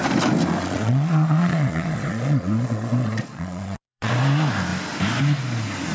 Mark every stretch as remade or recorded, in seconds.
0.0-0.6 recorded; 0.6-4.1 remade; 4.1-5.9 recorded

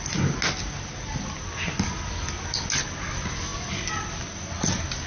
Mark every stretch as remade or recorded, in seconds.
0.0-5.1 recorded